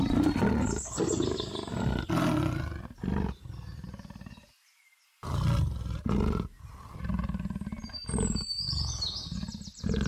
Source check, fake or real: real